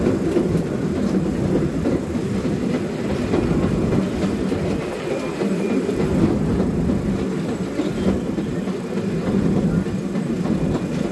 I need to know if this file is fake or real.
real